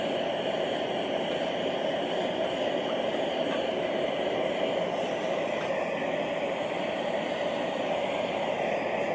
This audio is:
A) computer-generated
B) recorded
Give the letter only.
B